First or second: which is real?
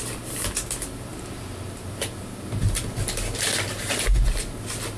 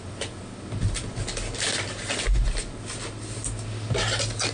second